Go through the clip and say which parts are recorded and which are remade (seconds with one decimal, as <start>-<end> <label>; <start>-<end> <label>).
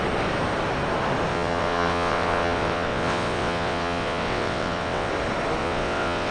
0.0-1.3 recorded; 1.3-5.1 remade; 5.1-5.6 recorded; 5.6-6.3 remade